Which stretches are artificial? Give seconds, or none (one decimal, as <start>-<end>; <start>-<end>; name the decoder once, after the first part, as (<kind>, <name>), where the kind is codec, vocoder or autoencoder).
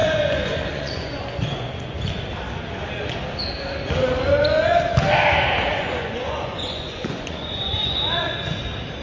0.0-2.0 (vocoder, Vocos); 5.7-8.5